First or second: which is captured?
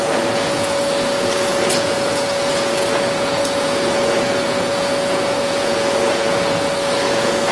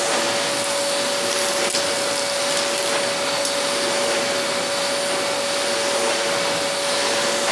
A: second